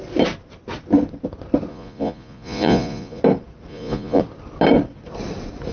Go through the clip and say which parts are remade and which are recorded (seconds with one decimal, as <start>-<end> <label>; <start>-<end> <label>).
0.0-1.7 recorded; 1.7-3.2 remade; 3.2-3.7 recorded; 3.7-4.2 remade; 4.2-5.7 recorded

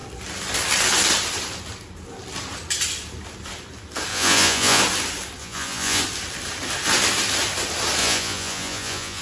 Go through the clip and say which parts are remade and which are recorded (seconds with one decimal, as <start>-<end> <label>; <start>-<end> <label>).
0.0-4.1 recorded; 4.1-4.8 remade; 4.8-5.4 recorded; 5.4-6.0 remade; 6.0-8.0 recorded; 8.0-9.2 remade

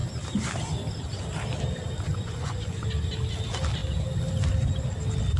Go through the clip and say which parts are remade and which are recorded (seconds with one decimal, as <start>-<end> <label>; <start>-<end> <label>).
0.0-2.1 recorded; 2.1-2.8 remade; 2.8-5.4 recorded

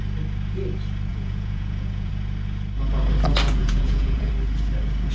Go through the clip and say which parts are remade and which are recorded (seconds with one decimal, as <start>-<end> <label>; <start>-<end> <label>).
0.0-1.1 recorded; 1.1-2.1 remade; 2.1-3.6 recorded; 3.6-4.3 remade; 4.3-5.1 recorded

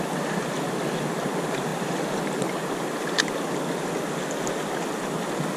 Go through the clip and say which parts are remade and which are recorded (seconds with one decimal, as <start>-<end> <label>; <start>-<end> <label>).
0.0-5.6 recorded

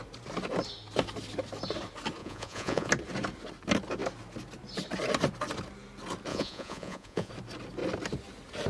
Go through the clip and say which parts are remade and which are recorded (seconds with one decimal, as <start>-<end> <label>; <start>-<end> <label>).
0.0-2.2 recorded; 2.2-2.9 remade; 2.9-6.3 recorded; 6.3-7.3 remade; 7.3-8.7 recorded

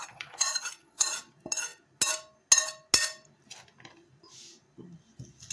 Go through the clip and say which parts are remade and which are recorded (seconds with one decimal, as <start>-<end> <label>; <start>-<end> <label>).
0.0-1.2 remade; 1.2-5.5 recorded

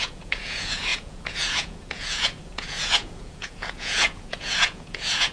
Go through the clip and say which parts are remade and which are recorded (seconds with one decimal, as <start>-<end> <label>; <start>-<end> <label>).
0.0-5.3 remade